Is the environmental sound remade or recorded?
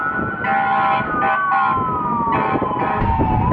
recorded